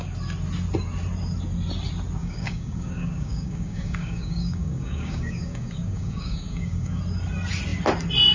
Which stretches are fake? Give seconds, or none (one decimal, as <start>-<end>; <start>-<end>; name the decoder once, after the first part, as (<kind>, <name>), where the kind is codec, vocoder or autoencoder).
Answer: 2.2-7.0 (codec, DAC)